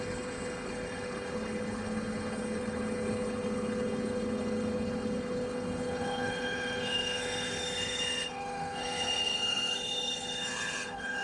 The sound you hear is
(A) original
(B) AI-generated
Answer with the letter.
B